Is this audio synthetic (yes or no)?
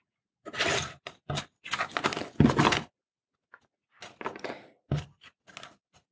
no